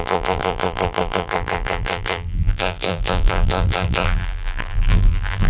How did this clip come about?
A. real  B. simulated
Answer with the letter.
B